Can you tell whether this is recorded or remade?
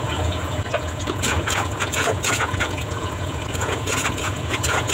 remade